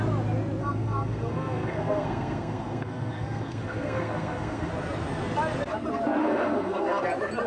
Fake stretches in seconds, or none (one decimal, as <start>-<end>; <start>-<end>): 0.6-4.7; 6.2-7.0